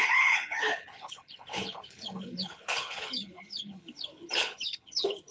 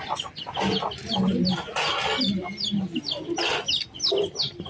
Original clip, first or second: second